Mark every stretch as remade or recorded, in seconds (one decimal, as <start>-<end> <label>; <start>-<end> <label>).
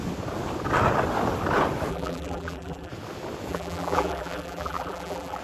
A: 0.0-1.9 recorded; 1.9-2.9 remade; 2.9-3.5 recorded; 3.5-5.4 remade